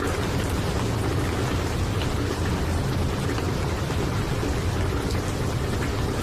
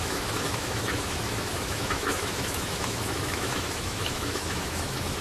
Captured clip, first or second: first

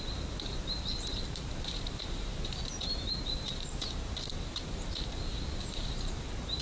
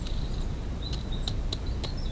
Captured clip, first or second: second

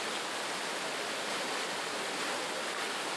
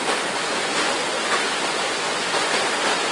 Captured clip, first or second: first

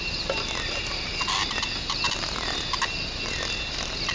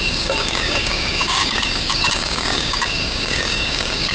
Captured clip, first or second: first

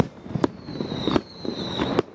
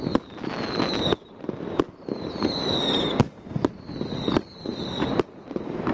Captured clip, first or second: second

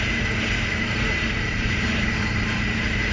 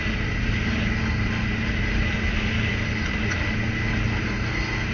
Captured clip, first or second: second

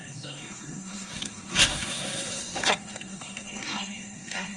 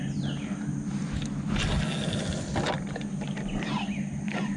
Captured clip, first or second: second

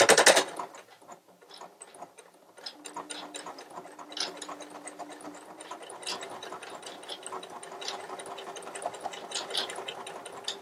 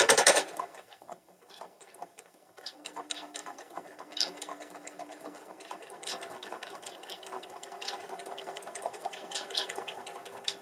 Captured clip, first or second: first